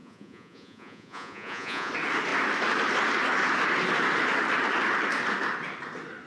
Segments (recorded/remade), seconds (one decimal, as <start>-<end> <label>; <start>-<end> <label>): 0.0-1.9 remade; 1.9-6.3 recorded